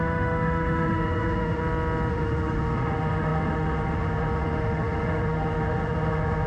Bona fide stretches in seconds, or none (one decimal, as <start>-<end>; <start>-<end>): 1.6-2.1